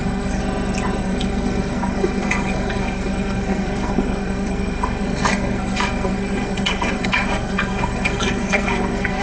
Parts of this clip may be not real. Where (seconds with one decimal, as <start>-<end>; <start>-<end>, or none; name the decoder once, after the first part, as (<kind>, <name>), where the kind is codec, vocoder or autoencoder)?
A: 0.0-0.4 (codec, SNAC); 1.0-9.2

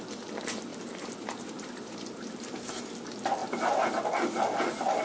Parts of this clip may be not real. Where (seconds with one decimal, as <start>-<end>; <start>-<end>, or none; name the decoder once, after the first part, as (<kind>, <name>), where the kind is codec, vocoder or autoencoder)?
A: 0.7-2.8 (vocoder, BigVGAN v2); 3.4-3.9

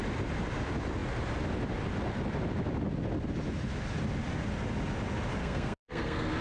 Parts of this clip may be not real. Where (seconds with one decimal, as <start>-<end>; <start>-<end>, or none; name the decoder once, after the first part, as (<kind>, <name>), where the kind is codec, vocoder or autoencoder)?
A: 5.4-6.4 (codec, SNAC)

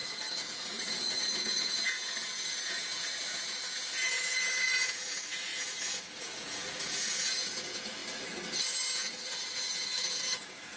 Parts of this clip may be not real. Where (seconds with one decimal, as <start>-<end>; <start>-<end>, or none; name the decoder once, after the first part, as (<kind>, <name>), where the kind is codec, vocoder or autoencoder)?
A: 0.0-8.0 (vocoder, Vocos); 8.9-10.8

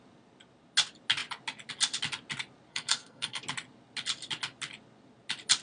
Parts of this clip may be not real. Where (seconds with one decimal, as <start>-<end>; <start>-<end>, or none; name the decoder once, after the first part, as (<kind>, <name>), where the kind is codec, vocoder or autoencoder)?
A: 2.7-3.4 (codec, SNAC)